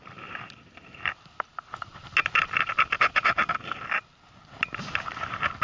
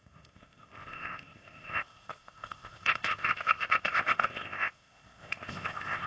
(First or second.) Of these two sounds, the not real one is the second